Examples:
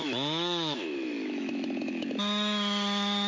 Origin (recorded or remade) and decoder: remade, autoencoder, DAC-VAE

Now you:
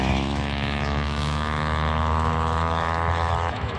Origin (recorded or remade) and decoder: remade, autoencoder, DAC-VAE